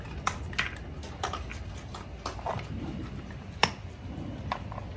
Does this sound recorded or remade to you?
recorded